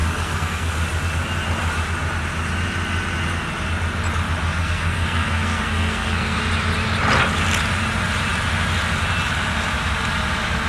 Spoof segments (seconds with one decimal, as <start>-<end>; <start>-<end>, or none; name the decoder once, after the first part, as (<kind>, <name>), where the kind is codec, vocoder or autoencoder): 0.0-0.7 (codec, SNAC); 4.6-6.4